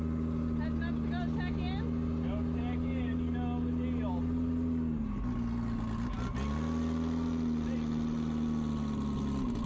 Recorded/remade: recorded